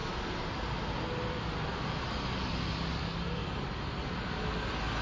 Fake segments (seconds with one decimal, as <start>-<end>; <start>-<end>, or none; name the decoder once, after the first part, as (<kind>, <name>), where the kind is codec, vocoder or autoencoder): none